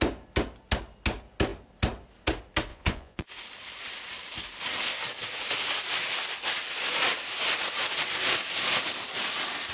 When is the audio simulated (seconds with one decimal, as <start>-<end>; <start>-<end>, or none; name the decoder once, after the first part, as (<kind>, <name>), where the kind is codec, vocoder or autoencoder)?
2.7-3.3 (vocoder, Vocos)